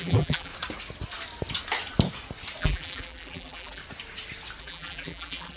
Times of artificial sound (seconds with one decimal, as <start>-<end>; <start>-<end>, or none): 0.0-0.5; 2.6-3.8; 4.6-5.6